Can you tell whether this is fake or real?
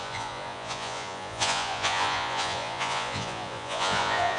fake